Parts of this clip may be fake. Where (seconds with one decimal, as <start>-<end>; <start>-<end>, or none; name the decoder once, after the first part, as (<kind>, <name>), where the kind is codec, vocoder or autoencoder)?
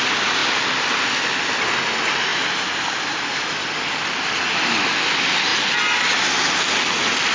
none